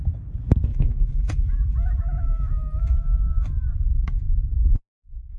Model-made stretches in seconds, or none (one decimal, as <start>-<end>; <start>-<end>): 0.7-3.2